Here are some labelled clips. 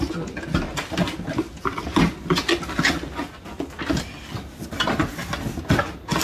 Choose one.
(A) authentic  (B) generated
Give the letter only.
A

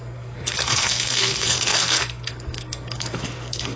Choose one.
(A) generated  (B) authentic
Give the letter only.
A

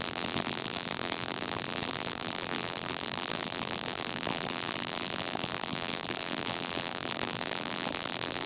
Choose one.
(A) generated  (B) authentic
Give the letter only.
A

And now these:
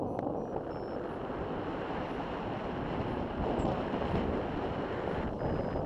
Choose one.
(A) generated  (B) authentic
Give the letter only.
B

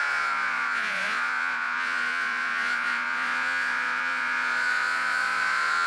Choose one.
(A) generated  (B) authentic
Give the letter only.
A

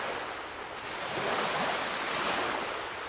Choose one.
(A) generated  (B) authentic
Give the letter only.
B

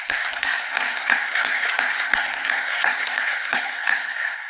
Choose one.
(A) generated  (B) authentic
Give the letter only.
A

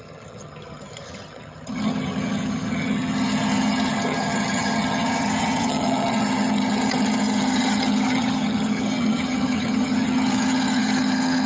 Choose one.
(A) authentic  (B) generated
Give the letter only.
B